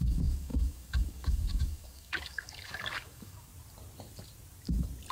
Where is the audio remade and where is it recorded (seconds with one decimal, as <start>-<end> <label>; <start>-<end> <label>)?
0.0-3.5 remade; 3.5-5.1 recorded